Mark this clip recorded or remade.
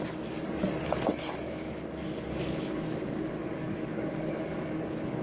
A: remade